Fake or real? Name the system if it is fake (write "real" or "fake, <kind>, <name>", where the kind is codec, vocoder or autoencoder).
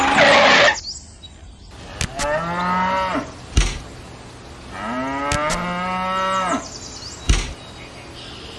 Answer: real